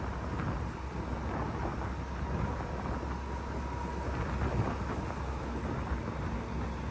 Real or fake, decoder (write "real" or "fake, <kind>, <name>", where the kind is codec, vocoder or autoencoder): real